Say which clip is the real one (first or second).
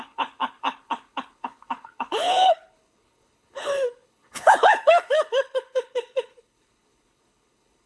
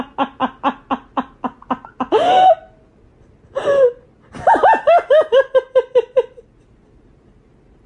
second